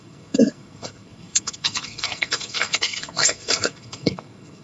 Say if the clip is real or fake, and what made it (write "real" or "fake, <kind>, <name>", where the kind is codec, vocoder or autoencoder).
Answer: fake, codec, SNAC